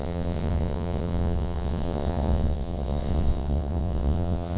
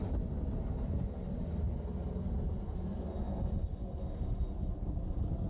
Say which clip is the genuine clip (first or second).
second